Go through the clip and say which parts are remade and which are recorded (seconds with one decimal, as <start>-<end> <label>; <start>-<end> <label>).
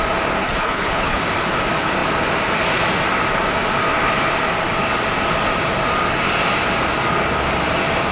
0.0-0.4 recorded; 0.4-1.2 remade; 1.2-8.1 recorded